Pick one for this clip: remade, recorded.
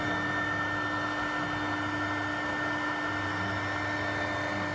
recorded